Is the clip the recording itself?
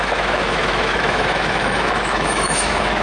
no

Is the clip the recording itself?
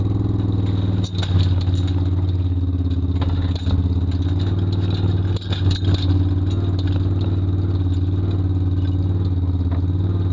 yes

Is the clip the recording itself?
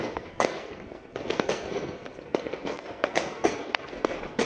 no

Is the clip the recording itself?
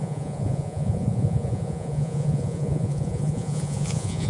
no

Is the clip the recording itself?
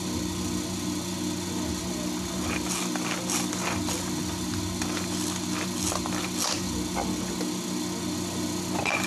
yes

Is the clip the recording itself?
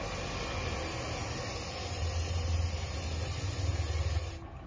yes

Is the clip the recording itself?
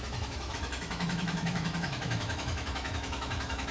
no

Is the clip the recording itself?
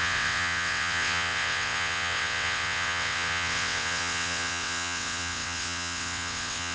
no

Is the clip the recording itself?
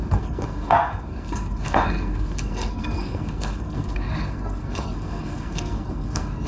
no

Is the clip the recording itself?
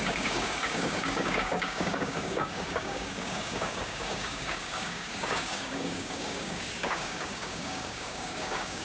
no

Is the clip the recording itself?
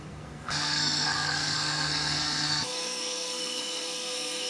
no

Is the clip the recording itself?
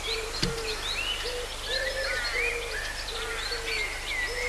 yes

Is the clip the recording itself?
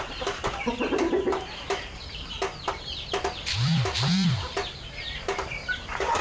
no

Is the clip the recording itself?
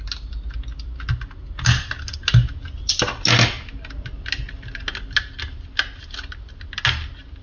yes